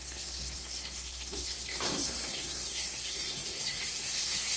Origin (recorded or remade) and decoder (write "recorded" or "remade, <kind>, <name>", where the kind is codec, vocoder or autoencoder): remade, codec, SNAC